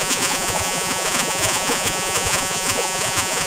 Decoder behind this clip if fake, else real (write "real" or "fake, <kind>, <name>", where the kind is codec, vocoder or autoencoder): fake, vocoder, Vocos